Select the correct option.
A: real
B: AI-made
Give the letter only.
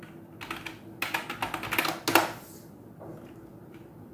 A